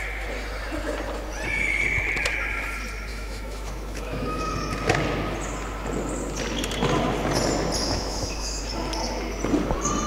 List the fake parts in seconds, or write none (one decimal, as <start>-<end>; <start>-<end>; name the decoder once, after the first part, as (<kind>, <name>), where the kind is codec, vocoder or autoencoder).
3.1-4.5 (autoencoder, DAC-VAE); 7.8-8.6